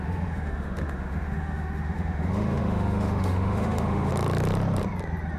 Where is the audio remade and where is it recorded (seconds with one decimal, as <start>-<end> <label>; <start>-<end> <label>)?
0.0-4.1 remade; 4.1-5.4 recorded